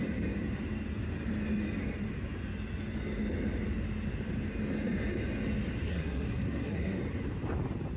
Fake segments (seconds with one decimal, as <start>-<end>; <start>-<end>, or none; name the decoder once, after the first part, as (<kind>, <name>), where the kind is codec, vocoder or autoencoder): 5.9-7.0 (codec, SNAC)

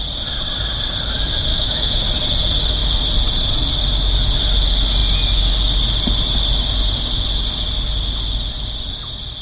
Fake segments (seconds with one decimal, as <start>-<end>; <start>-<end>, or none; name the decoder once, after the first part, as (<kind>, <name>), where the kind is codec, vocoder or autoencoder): 1.5-2.0 (autoencoder, DAC-VAE)

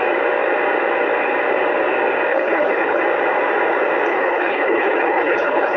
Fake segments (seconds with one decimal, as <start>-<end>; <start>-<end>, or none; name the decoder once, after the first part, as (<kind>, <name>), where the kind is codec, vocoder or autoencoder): 2.3-3.0 (codec, HILCodec); 4.1-5.8